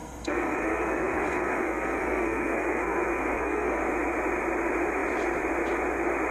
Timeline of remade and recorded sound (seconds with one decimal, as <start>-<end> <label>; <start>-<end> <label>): 0.0-3.8 remade; 3.8-6.3 recorded